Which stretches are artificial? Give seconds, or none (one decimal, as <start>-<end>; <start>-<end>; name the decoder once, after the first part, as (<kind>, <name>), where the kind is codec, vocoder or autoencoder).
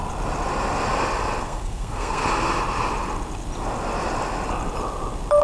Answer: 1.4-2.2 (codec, SNAC)